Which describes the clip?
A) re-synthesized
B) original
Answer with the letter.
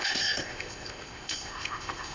A